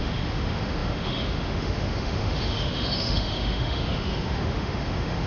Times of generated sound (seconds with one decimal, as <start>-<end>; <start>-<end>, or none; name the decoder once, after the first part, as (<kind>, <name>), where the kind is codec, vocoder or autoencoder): 0.0-5.3 (autoencoder, DAC-VAE)